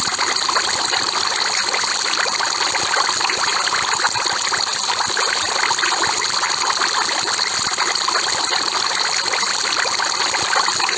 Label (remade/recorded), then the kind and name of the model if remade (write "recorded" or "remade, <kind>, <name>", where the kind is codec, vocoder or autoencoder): recorded